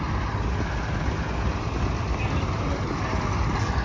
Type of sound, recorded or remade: recorded